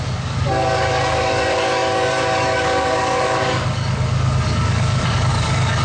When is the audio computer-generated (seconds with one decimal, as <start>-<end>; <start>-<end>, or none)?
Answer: 0.0-5.8